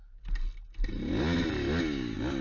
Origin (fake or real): real